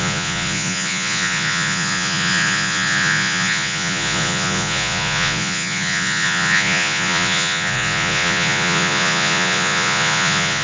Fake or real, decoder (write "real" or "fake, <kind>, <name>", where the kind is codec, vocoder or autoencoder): fake, vocoder, Vocos